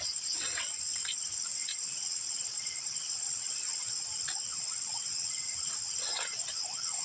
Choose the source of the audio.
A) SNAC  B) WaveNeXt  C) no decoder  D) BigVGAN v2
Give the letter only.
B